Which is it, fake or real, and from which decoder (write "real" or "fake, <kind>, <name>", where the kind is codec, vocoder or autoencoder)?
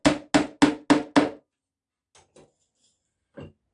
real